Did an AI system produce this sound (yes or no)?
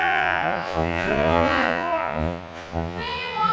yes